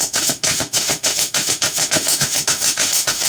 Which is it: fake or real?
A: fake